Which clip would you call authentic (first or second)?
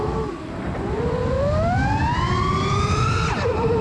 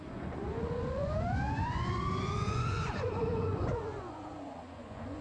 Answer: first